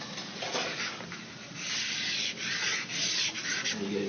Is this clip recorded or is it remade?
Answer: recorded